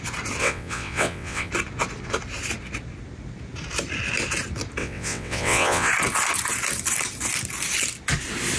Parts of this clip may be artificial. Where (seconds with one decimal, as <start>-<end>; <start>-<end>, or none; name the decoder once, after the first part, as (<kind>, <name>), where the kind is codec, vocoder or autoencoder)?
0.4-1.5 (vocoder, WaveNeXt); 4.8-5.9